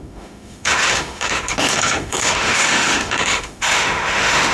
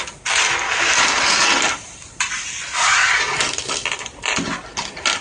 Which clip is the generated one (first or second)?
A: first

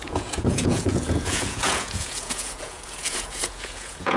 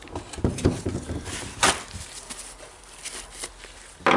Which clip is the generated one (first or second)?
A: first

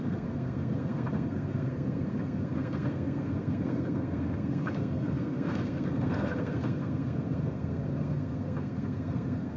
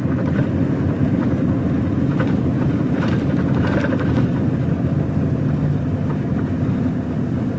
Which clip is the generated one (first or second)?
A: first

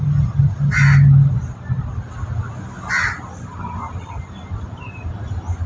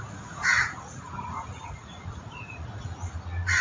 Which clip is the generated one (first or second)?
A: second